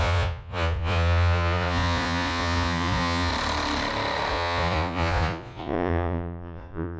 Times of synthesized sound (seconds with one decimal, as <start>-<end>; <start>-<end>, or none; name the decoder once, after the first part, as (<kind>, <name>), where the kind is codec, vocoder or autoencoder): 0.0-3.3 (vocoder, Vocos); 4.3-7.0